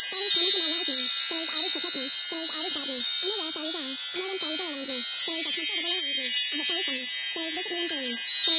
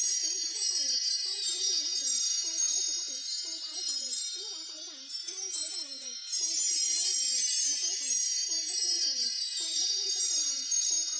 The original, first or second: first